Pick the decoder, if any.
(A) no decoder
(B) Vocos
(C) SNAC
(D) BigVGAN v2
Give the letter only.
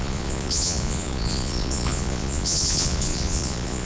B